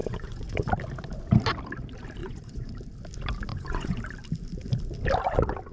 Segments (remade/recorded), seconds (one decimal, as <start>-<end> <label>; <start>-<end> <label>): 0.0-0.7 remade; 0.7-2.2 recorded; 2.2-2.7 remade; 2.7-3.5 recorded; 3.5-4.0 remade; 4.0-5.7 recorded